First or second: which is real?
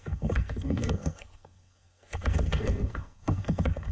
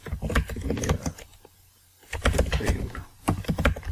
second